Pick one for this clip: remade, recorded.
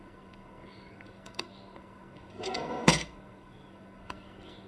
remade